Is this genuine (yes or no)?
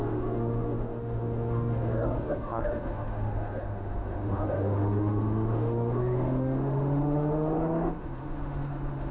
no